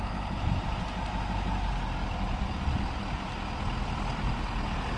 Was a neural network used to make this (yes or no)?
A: no